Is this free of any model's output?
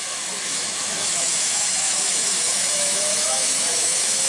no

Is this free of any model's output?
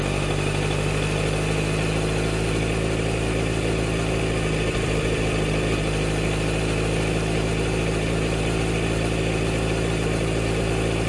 yes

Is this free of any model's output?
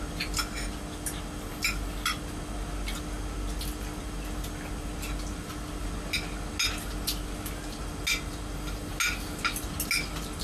yes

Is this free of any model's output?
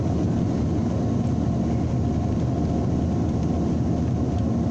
yes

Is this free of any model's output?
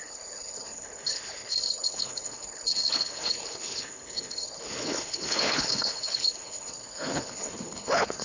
no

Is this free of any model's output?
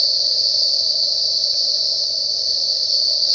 yes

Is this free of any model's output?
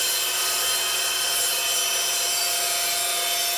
yes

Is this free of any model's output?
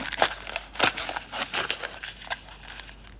yes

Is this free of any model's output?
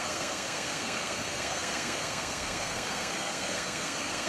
no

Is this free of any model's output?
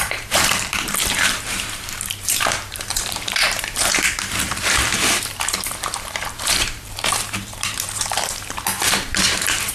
no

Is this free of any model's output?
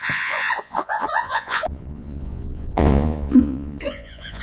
no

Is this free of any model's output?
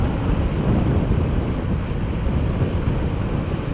yes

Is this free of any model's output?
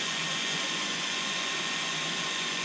no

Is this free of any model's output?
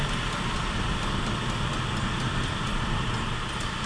yes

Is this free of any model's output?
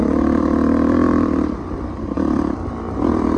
no